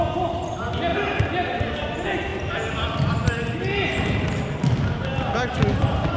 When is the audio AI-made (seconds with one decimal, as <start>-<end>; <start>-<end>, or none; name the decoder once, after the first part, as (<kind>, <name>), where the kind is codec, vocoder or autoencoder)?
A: none